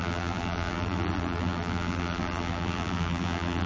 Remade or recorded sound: remade